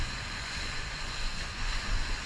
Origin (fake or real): fake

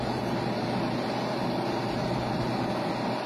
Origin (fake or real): real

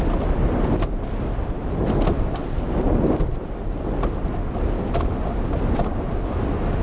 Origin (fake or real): real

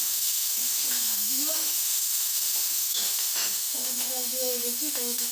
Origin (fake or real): fake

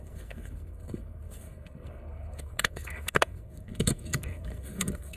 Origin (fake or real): fake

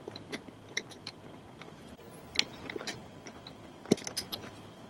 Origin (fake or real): real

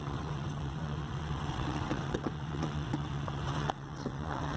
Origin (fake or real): fake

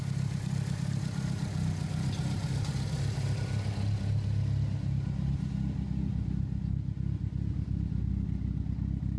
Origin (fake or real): real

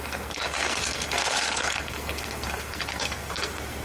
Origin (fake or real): fake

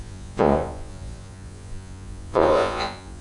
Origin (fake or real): fake